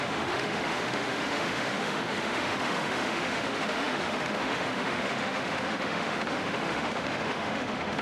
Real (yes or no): no